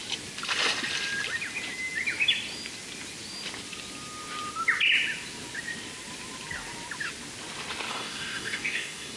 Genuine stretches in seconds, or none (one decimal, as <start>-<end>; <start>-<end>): 0.0-7.9

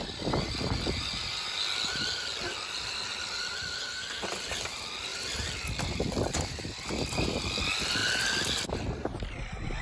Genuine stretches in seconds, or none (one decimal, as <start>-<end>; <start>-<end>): 0.0-9.8

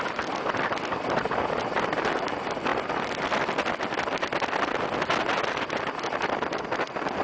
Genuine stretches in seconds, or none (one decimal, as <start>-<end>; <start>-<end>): 0.0-7.2

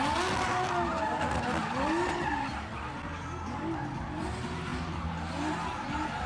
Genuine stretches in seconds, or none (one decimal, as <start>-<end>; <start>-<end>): 0.0-6.3

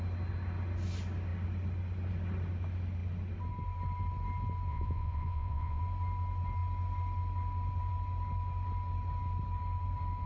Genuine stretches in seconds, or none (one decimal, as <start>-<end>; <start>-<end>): 0.0-4.7; 5.8-10.3

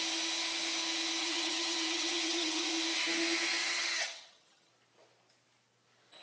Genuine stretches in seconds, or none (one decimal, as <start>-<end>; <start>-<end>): 0.0-1.2; 2.7-3.6; 4.7-6.2

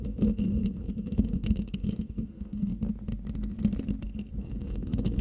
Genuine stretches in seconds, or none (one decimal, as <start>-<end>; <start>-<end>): 2.7-4.4